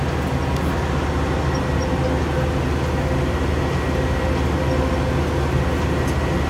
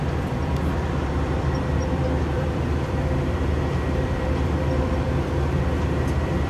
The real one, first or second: first